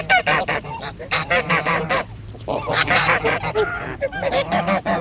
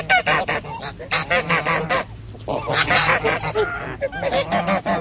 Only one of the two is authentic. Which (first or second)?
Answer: second